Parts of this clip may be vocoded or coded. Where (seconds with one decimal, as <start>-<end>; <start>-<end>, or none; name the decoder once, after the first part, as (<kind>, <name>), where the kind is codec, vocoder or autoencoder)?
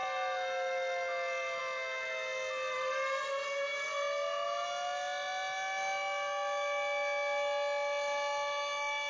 none